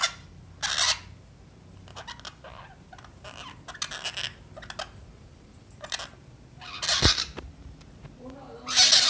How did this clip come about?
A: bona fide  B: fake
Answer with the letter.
A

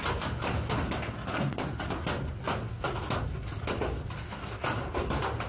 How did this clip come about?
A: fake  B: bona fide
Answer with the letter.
B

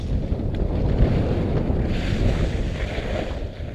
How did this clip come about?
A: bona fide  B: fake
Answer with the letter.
A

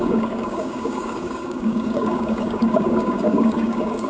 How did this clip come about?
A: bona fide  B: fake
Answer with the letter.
B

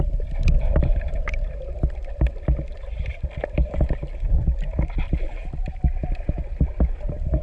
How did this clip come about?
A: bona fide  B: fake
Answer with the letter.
A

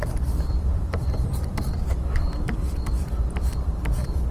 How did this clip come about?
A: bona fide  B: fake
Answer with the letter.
B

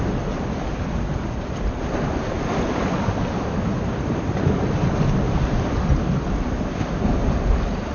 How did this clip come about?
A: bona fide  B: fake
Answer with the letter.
A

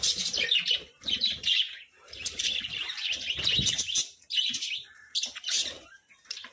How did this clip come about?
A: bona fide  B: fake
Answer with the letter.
B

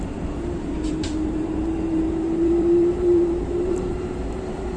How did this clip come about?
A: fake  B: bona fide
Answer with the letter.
A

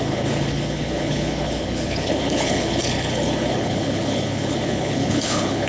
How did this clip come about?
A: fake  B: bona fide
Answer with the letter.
A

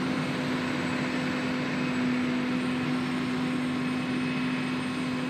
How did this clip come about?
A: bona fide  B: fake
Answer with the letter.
A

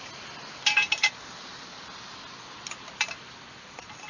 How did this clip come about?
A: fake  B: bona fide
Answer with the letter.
B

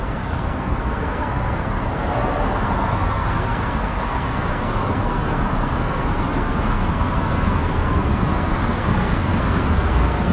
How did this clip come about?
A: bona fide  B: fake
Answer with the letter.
B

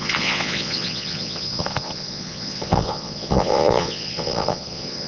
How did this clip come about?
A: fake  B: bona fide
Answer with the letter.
A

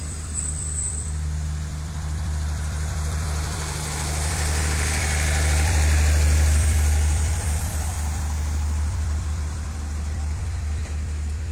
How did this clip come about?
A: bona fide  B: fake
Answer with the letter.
B